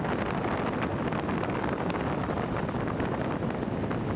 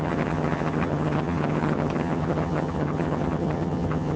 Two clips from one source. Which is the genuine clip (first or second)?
first